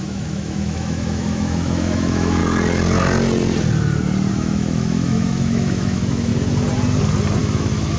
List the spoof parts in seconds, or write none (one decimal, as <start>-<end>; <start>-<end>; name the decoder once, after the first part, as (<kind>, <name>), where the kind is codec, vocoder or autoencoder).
0.0-2.4 (autoencoder, DAC-VAE); 4.3-6.3; 7.4-8.0